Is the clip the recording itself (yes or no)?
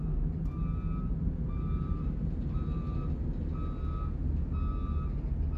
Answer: yes